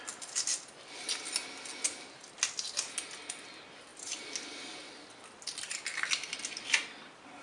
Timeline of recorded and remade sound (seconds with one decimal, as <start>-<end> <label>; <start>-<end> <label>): 0.0-7.4 recorded